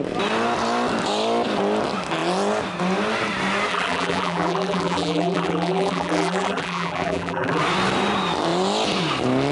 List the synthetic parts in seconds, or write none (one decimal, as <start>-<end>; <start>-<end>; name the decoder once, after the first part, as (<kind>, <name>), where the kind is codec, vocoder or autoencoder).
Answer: 3.7-7.6 (vocoder, BigVGAN v2)